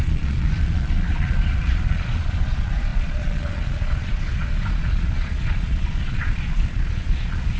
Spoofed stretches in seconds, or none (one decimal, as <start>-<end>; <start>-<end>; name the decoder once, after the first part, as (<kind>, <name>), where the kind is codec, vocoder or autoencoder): 0.0-7.6 (vocoder, Vocos)